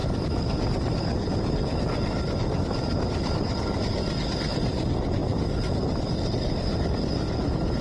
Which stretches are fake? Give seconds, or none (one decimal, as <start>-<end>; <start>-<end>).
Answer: none